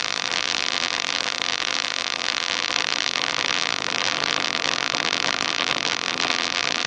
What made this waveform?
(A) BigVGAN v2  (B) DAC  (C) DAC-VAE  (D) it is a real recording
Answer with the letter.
A